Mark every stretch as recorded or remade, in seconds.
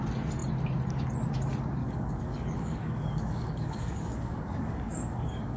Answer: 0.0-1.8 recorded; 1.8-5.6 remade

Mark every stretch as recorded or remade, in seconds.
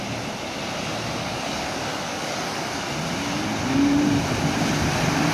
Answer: 0.0-1.2 recorded; 1.2-2.9 remade; 2.9-5.3 recorded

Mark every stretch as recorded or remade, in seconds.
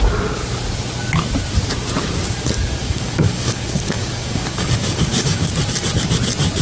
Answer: 0.0-2.8 recorded; 2.8-5.5 remade; 5.5-6.6 recorded